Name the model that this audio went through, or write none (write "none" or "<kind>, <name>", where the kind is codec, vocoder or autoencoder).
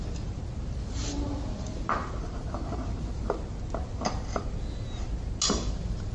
none